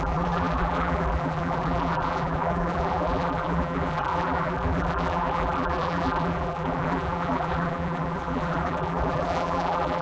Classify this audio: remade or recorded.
remade